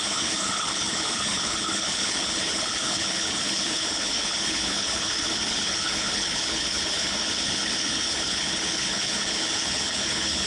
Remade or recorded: remade